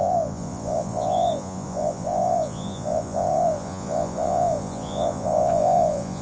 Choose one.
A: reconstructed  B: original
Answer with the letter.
A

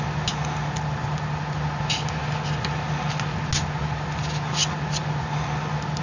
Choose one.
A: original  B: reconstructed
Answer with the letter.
A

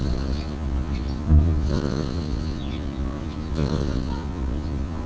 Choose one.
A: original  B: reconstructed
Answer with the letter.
B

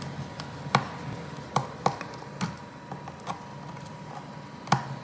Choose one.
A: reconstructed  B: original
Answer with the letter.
B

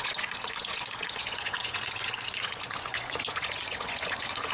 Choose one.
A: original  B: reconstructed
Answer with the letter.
B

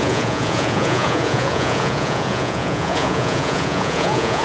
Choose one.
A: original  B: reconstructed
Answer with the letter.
B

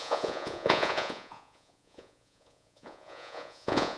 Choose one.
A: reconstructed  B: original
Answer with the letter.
A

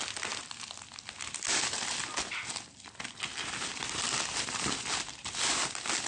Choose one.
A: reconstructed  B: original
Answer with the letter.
B